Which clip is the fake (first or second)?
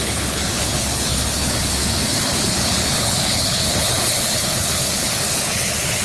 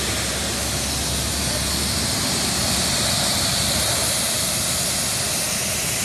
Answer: first